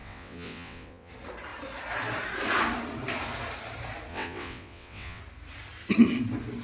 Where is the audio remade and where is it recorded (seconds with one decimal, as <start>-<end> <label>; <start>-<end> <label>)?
0.0-1.1 remade; 1.1-4.1 recorded; 4.1-5.2 remade; 5.2-6.6 recorded